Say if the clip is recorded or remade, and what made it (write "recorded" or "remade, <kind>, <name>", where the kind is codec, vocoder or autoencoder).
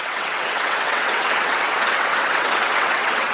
remade, vocoder, WaveNeXt